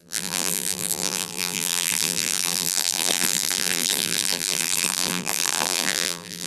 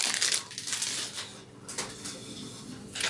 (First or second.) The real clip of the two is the second